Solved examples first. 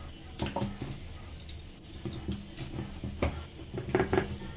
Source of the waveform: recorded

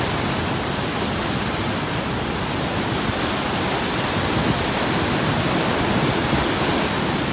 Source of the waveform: recorded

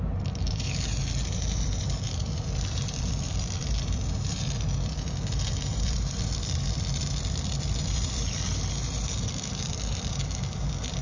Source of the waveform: remade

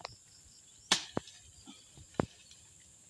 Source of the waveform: recorded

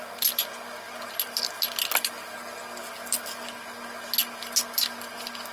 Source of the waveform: recorded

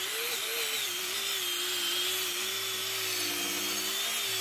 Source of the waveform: remade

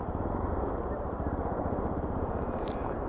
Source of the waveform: remade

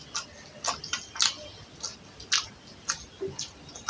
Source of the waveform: recorded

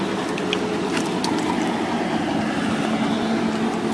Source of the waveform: remade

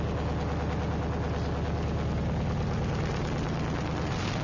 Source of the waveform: recorded